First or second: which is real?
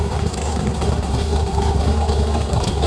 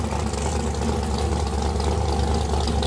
second